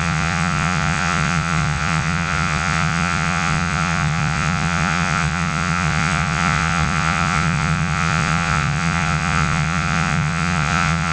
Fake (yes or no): yes